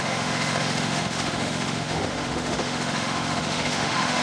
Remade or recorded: remade